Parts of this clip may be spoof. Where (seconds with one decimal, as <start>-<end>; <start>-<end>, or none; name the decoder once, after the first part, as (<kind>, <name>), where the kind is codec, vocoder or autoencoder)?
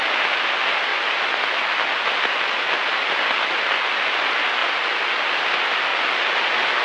none